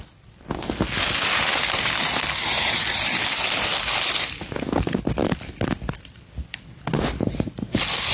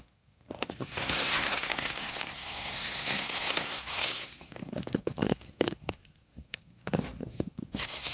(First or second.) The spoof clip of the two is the second